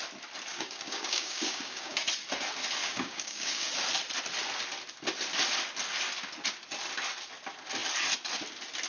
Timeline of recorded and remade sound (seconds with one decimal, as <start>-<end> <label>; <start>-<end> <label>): 0.0-0.5 recorded; 0.5-2.0 remade; 2.0-2.8 recorded; 2.8-3.8 remade; 3.8-8.9 recorded